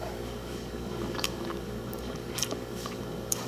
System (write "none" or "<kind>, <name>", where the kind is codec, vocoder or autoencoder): codec, DAC